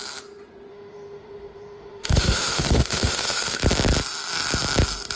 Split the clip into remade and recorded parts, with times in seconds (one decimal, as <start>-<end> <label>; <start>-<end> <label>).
0.0-0.7 recorded; 0.7-3.6 remade; 3.6-5.2 recorded